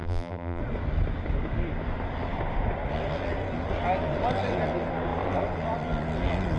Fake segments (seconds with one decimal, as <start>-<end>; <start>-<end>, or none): 0.0-0.6

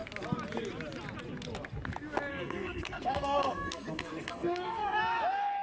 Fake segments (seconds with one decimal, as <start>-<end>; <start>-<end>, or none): 2.3-5.0